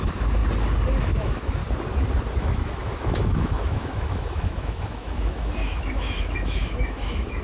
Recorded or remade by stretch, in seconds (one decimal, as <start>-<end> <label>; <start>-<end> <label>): 0.0-0.4 remade; 0.4-1.0 recorded; 1.0-1.6 remade; 1.6-2.4 recorded; 2.4-7.4 remade